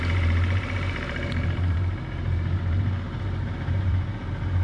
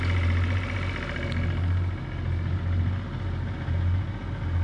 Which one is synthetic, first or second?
first